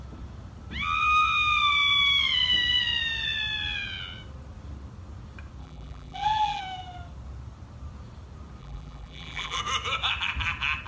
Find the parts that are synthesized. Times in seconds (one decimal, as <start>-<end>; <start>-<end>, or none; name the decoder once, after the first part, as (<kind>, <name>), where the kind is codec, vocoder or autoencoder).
5.6-6.6 (vocoder, BigVGAN v2); 8.6-9.6